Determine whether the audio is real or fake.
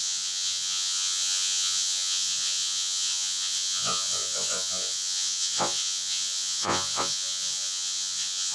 fake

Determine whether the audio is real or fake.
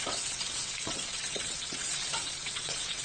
fake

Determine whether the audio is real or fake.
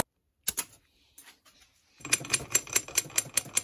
real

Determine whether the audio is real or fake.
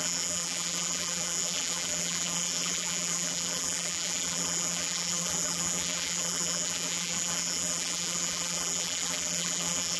fake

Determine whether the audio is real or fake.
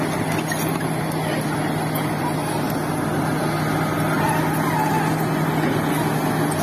real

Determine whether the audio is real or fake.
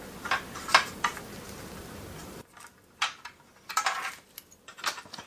fake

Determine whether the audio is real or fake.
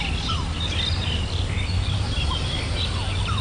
real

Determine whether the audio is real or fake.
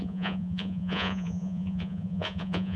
fake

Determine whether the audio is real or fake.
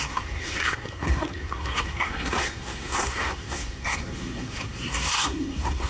fake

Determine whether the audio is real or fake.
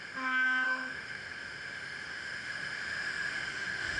fake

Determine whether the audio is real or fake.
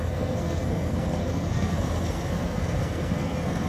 fake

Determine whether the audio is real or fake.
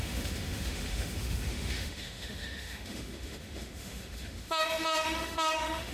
fake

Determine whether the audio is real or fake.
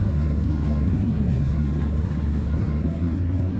fake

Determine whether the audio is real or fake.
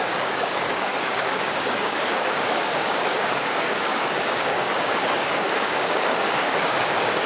fake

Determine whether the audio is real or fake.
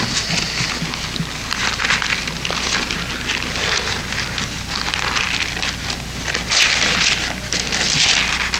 real